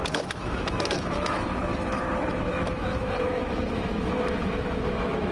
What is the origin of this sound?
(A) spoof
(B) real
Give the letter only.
A